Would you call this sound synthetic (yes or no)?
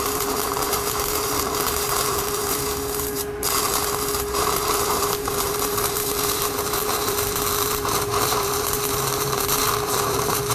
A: yes